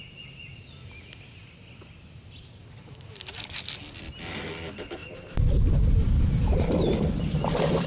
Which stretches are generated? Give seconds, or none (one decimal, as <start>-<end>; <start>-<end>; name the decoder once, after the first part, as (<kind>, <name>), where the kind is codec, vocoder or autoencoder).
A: none